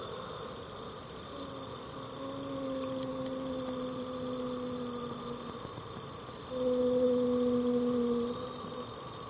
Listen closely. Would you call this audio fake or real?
real